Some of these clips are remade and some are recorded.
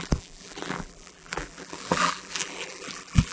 remade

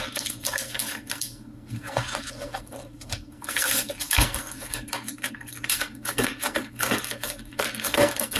remade